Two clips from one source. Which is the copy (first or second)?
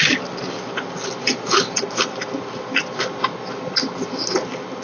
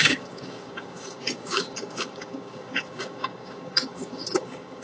second